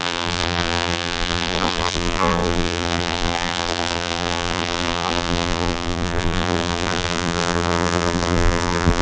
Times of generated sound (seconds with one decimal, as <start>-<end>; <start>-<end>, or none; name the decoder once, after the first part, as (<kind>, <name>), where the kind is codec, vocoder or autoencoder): 0.0-9.0 (vocoder, BigVGAN v2)